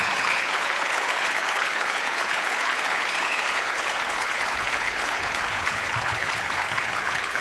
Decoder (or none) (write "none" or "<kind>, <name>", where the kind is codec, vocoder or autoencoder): codec, HILCodec